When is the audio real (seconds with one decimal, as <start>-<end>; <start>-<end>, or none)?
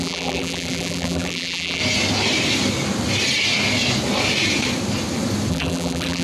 1.8-5.5